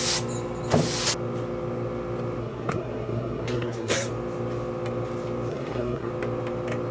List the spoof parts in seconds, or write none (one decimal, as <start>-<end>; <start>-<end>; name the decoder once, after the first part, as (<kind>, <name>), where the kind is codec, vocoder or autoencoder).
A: 2.4-4.1 (codec, SNAC); 5.5-6.1